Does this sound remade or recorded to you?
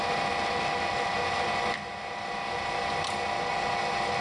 recorded